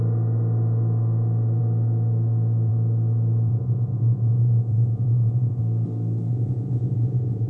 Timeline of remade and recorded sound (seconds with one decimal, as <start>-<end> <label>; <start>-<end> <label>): 0.0-3.5 recorded; 3.5-5.6 remade; 5.6-6.3 recorded; 6.3-7.5 remade